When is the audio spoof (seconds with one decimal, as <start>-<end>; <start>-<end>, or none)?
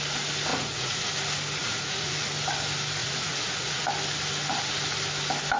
0.5-1.1; 1.6-2.1; 3.0-3.9